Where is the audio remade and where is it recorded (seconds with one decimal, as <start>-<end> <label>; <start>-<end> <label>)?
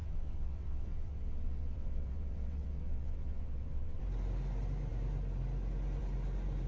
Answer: 0.0-4.0 remade; 4.0-6.7 recorded